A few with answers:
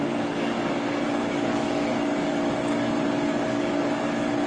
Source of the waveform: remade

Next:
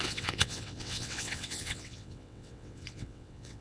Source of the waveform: remade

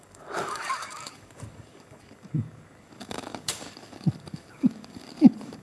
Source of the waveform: remade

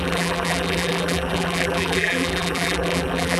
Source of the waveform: remade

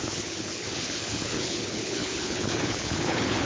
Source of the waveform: remade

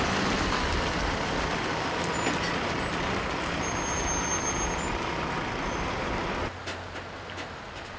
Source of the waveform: recorded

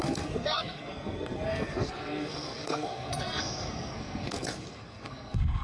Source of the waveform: remade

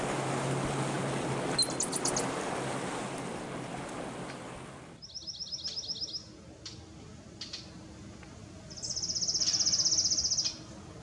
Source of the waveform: recorded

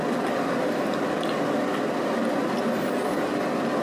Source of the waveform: recorded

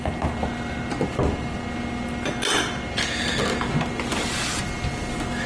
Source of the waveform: recorded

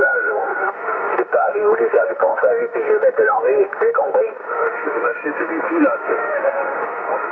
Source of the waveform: remade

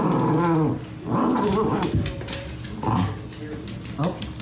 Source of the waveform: recorded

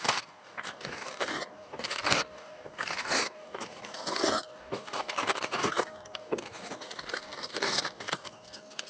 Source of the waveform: remade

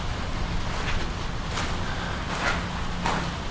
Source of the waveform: recorded